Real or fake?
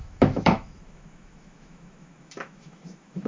fake